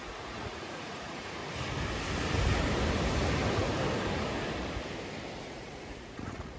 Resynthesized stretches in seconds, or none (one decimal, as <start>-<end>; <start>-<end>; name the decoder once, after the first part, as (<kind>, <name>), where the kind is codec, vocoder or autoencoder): 0.0-1.4 (vocoder, Vocos); 5.4-6.6